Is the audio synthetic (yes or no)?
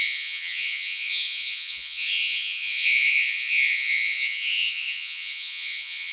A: yes